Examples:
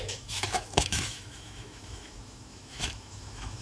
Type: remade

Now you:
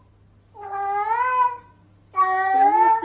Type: recorded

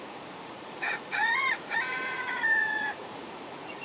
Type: remade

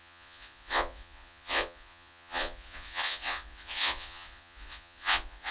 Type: remade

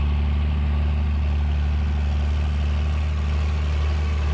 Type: recorded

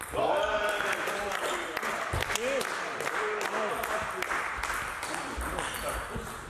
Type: recorded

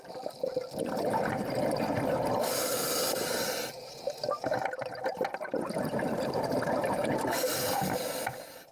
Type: recorded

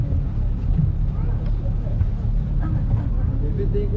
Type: recorded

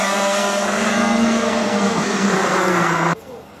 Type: remade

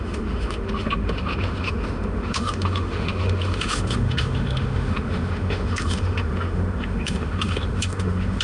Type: remade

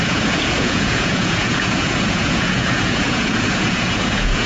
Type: remade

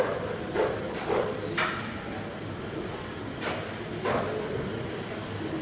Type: recorded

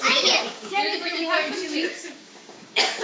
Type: remade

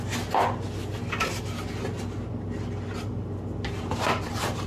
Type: recorded